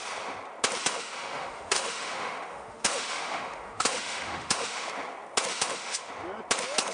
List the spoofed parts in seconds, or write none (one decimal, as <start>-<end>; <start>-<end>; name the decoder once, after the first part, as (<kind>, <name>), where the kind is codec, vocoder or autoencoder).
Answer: 0.8-4.9 (autoencoder, DAC-VAE); 5.5-6.1